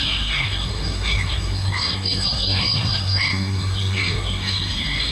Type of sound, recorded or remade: remade